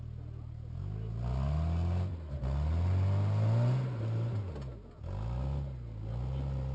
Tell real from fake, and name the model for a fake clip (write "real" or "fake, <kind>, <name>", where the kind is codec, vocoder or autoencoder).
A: real